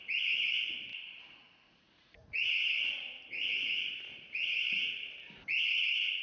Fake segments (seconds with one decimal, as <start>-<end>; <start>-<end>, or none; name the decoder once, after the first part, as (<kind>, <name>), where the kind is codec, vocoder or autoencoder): 0.9-3.2 (vocoder, Vocos); 4.1-4.8